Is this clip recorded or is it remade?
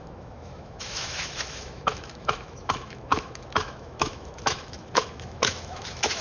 remade